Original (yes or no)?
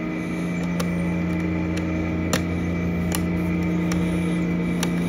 yes